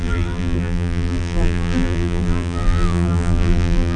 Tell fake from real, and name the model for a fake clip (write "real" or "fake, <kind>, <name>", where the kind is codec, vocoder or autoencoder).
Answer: fake, vocoder, BigVGAN v2